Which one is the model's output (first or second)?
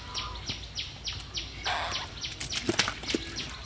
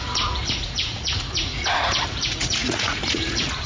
second